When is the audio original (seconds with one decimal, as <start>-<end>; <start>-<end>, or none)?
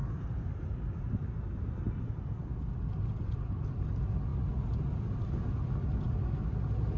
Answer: 0.0-7.0